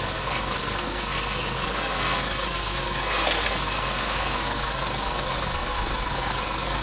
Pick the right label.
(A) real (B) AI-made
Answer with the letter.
B